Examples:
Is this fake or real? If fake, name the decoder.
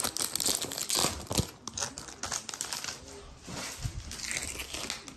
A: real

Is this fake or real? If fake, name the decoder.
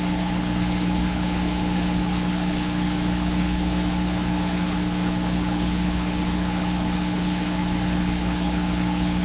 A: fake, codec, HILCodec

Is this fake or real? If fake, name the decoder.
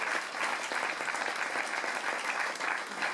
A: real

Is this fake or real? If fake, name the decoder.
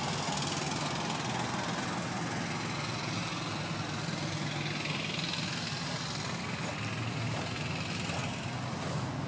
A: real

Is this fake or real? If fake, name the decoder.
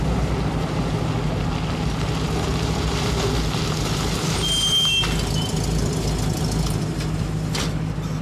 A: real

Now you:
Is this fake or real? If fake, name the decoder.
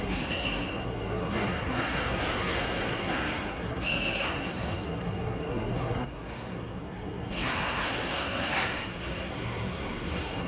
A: fake, codec, SNAC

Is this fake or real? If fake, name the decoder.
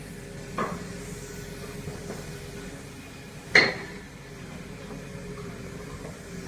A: real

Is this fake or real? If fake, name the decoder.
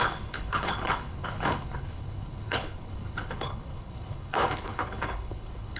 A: fake, codec, HILCodec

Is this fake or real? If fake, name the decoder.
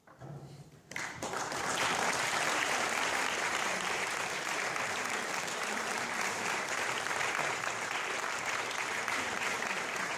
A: fake, vocoder, BigVGAN v2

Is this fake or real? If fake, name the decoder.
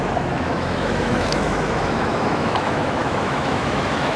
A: fake, autoencoder, DAC-VAE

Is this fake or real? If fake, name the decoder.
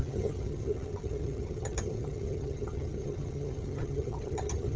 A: fake, vocoder, HiFi-GAN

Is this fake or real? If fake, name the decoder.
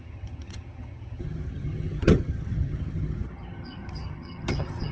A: fake, vocoder, HiFi-GAN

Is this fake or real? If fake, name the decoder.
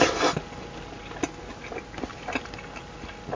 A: real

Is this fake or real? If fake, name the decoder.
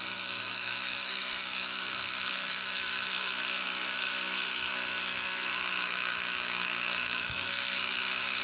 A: fake, codec, SNAC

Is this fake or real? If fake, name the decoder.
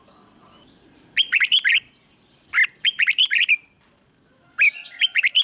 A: real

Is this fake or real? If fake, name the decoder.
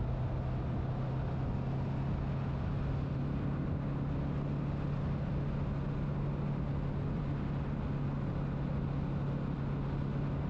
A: real